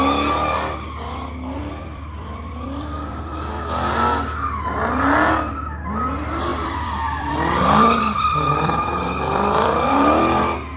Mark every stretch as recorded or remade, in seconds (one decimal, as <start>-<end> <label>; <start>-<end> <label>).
0.0-1.6 recorded; 1.6-3.3 remade; 3.3-6.5 recorded; 6.5-10.2 remade; 10.2-10.8 recorded